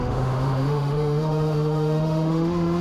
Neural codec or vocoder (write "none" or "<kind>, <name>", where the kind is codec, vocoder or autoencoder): autoencoder, DAC-VAE